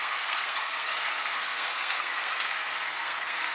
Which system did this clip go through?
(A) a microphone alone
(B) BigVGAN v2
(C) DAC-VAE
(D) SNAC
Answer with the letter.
D